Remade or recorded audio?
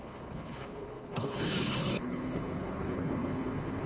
remade